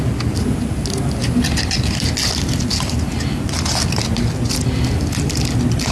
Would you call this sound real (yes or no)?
yes